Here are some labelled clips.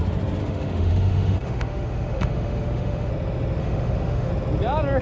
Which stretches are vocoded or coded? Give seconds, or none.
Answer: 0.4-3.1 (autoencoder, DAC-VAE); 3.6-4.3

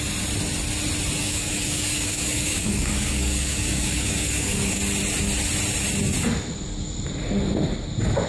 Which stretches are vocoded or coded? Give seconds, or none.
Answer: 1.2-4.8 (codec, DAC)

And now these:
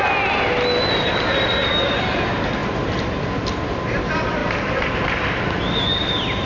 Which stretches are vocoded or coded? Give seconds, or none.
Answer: none

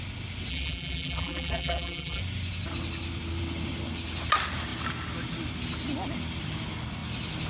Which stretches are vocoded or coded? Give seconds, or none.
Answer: 0.5-2.2 (vocoder, BigVGAN v2)